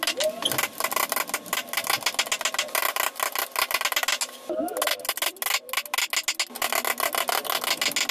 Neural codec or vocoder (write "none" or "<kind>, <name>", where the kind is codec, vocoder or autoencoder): none